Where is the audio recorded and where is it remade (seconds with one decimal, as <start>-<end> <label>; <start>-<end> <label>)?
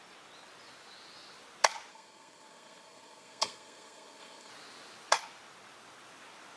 0.0-1.9 recorded; 1.9-4.5 remade; 4.5-6.6 recorded